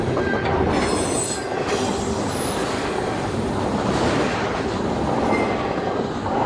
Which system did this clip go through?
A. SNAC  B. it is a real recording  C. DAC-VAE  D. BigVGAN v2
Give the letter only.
B